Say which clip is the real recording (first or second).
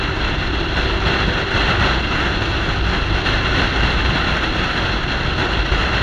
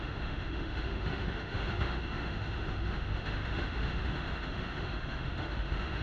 first